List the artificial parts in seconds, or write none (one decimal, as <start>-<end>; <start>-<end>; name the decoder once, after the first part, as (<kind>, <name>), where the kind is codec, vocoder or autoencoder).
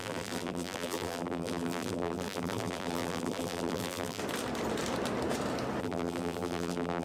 0.0-4.2 (vocoder, BigVGAN v2); 5.8-7.0